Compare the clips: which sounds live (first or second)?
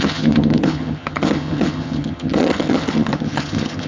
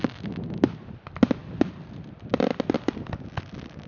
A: second